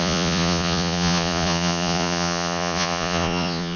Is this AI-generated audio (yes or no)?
yes